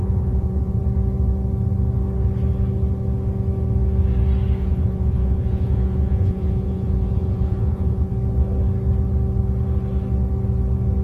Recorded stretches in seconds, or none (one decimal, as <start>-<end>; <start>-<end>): 0.8-4.6; 8.1-11.0